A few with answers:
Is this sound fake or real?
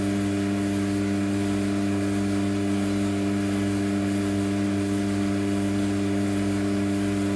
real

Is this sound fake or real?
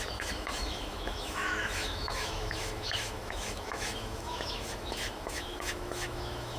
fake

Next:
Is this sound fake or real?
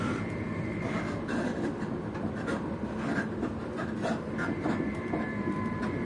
fake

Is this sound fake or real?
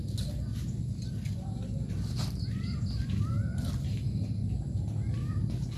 real